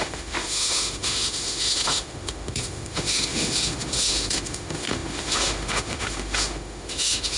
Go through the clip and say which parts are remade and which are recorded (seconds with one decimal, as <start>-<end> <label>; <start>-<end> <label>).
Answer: 0.0-7.4 remade